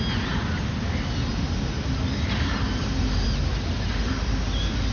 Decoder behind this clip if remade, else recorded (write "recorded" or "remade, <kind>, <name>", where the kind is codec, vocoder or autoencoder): recorded